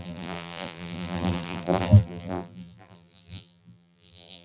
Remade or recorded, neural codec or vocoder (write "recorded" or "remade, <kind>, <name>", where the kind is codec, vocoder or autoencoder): remade, vocoder, BigVGAN v2